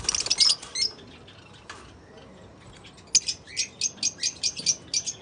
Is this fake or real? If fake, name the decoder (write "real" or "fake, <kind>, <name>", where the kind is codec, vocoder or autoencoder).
real